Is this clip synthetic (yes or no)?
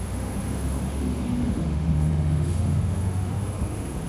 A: yes